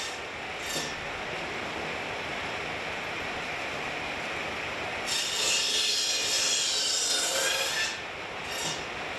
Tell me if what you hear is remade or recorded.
recorded